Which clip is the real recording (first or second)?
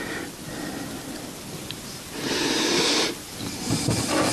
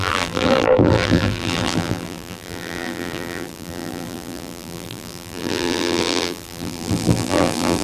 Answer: first